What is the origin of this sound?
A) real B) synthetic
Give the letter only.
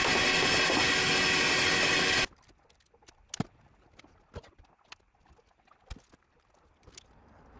A